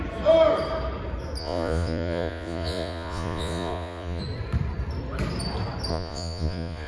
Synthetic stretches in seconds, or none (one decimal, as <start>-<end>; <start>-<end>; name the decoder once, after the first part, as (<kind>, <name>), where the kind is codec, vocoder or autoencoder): 1.4-4.2 (vocoder, Vocos); 5.9-6.9